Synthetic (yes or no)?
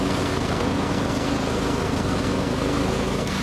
yes